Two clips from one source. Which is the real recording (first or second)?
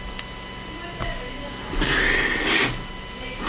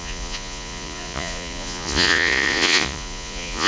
first